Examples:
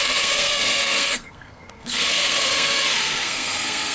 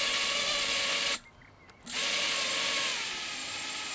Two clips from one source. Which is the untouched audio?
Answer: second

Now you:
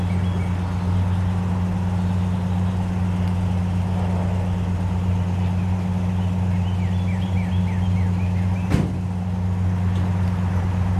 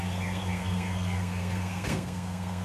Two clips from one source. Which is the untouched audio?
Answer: first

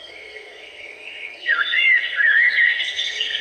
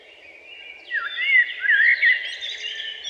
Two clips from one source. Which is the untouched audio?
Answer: second